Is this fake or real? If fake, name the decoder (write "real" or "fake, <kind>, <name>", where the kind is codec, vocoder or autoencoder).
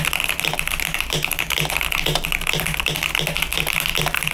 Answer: real